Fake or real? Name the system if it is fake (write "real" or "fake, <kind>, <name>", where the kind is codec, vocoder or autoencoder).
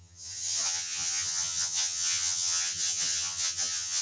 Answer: fake, vocoder, HiFi-GAN